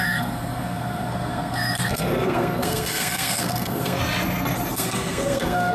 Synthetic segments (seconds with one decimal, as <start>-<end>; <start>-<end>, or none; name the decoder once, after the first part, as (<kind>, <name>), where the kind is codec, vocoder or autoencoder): 0.0-4.0 (codec, SNAC); 4.7-5.7

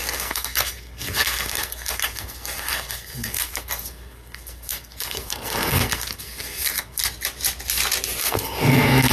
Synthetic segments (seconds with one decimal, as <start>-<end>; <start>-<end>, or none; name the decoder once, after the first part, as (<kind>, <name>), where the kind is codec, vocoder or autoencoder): 0.0-7.0 (codec, SNAC); 8.2-9.1